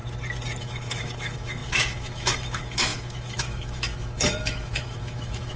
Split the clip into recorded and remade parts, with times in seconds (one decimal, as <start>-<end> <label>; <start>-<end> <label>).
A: 0.0-0.6 recorded; 0.6-5.6 remade